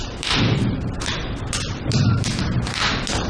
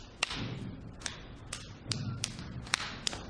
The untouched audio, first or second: second